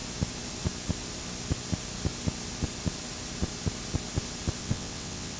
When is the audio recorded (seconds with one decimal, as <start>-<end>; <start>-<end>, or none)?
0.0-4.6